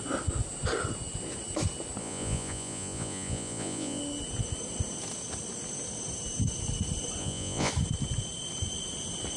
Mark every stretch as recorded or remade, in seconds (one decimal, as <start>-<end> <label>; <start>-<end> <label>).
0.0-2.0 recorded; 2.0-4.0 remade; 4.0-7.2 recorded; 7.2-7.7 remade; 7.7-9.4 recorded